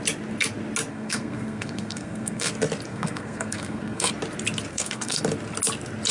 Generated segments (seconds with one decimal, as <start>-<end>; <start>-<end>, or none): 0.9-2.5; 2.9-4.1; 4.7-5.2